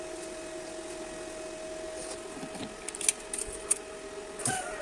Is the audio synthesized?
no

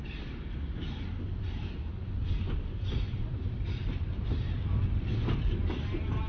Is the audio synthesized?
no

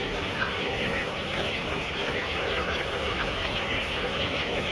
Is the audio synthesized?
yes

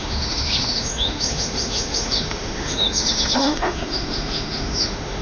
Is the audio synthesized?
yes